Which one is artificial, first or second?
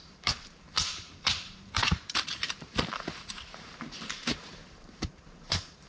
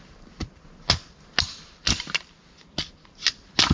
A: first